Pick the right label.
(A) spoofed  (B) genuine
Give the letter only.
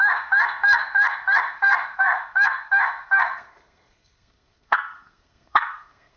A